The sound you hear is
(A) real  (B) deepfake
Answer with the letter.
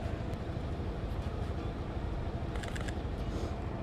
A